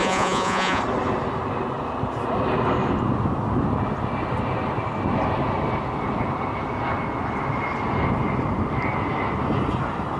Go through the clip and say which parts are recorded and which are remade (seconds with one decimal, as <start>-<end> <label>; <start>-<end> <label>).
0.0-0.8 remade; 0.8-10.2 recorded

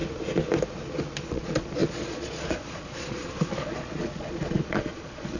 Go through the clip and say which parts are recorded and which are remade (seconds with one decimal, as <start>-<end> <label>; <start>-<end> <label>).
0.0-1.3 recorded; 1.3-5.4 remade

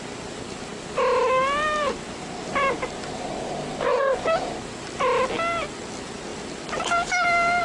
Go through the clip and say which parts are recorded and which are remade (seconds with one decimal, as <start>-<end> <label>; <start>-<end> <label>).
0.0-7.6 recorded

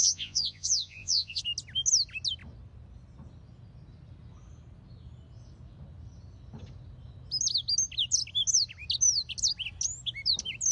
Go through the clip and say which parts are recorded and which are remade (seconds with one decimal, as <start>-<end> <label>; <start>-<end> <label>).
0.0-1.4 remade; 1.4-10.7 recorded

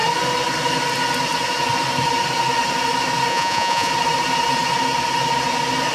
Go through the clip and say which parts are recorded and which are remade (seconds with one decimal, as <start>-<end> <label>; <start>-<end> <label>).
0.0-3.3 recorded; 3.3-3.9 remade; 3.9-5.9 recorded